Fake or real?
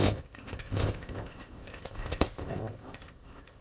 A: fake